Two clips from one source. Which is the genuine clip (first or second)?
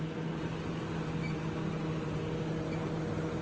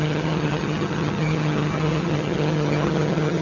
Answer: first